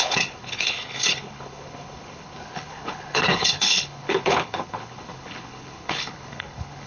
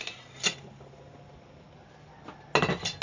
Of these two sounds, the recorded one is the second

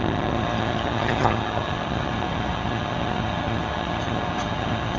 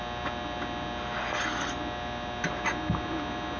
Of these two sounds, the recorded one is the second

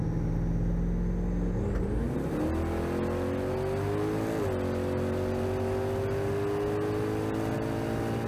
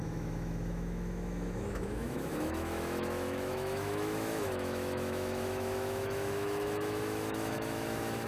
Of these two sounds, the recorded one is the first